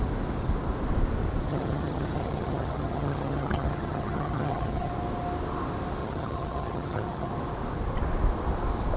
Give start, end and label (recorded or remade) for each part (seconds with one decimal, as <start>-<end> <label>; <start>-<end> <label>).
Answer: 0.0-1.5 recorded; 1.5-4.9 remade; 4.9-6.0 recorded; 6.0-7.3 remade; 7.3-9.0 recorded